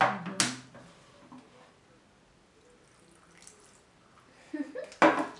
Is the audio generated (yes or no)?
no